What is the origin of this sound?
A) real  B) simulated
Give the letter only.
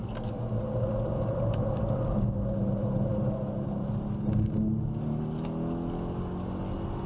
A